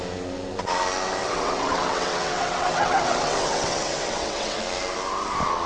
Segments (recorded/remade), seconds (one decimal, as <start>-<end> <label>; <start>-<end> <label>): 0.0-1.2 recorded; 1.2-4.6 remade; 4.6-5.7 recorded